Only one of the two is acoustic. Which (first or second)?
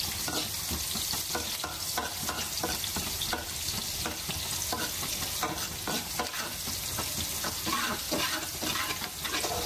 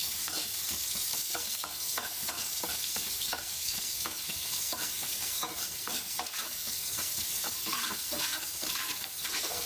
first